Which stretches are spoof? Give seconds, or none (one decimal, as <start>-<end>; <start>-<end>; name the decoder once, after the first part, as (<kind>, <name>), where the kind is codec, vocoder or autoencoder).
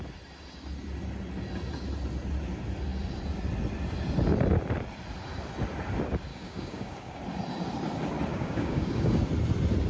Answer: 6.3-7.2 (codec, DAC); 8.3-9.2